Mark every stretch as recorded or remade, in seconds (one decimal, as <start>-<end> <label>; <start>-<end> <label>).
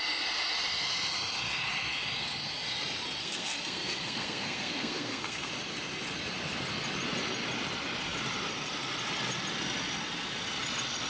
0.0-3.2 recorded; 3.2-5.5 remade; 5.5-11.1 recorded